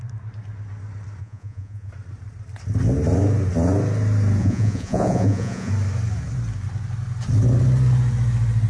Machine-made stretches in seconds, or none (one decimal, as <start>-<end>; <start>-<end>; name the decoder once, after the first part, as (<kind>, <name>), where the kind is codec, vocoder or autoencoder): 1.2-1.9 (vocoder, Vocos); 4.4-5.7